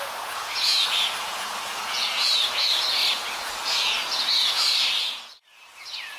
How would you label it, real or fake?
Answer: fake